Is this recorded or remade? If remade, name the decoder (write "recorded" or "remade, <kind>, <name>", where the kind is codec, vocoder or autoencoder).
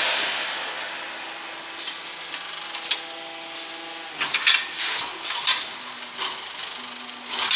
recorded